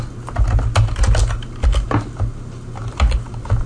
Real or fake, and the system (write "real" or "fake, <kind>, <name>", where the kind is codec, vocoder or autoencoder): real